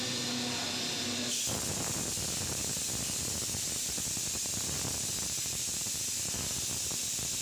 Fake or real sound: real